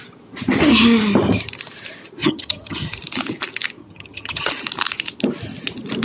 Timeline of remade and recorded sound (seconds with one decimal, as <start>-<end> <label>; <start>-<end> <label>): 0.0-2.2 recorded; 2.2-2.9 remade; 2.9-3.8 recorded; 3.8-4.5 remade; 4.5-6.0 recorded